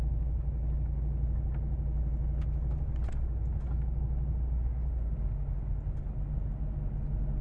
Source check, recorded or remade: recorded